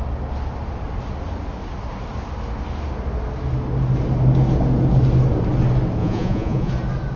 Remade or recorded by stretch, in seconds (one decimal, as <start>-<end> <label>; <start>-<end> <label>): 0.0-6.0 recorded; 6.0-6.7 remade; 6.7-7.2 recorded